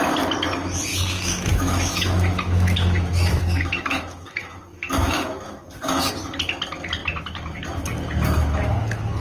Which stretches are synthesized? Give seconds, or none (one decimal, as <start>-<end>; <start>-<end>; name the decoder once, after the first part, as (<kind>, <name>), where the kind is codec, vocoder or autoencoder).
0.9-6.1 (autoencoder, DAC-VAE)